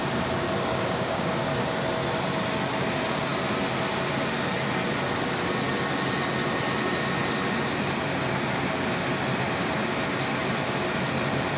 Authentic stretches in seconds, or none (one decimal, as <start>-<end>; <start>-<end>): 0.0-0.7; 1.4-11.6